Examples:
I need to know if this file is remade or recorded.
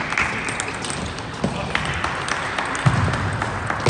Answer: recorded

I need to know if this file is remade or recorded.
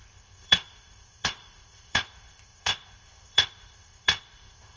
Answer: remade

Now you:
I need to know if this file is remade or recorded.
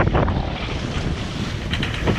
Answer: recorded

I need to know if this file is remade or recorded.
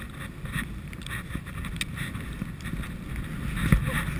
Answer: recorded